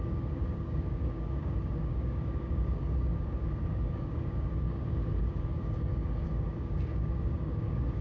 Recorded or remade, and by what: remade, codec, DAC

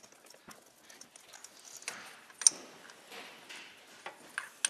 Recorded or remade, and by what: recorded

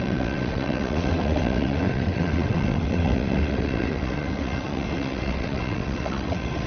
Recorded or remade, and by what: remade, vocoder, WaveNeXt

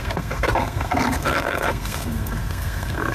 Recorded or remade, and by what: remade, codec, SNAC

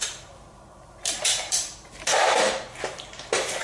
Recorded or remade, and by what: remade, vocoder, BigVGAN v2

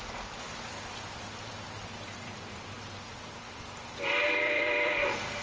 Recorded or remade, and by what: remade, vocoder, BigVGAN v2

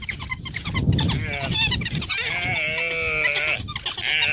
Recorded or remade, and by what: recorded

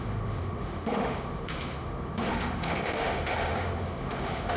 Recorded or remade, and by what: remade, autoencoder, DAC-VAE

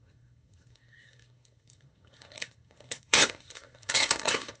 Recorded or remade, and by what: remade, codec, SNAC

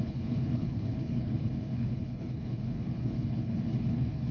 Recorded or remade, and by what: remade, codec, HILCodec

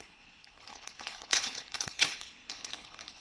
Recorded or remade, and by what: remade, codec, HILCodec